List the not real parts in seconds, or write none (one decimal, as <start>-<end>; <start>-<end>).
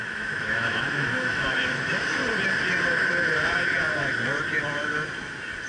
0.0-2.2